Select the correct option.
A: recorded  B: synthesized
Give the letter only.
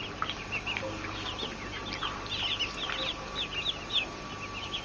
A